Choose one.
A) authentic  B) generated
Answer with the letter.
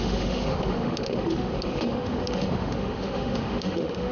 B